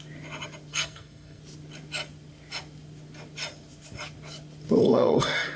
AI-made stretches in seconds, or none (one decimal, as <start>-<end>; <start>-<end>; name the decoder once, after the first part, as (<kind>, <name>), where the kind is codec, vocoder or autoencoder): 0.7-1.4 (codec, SNAC); 4.8-5.6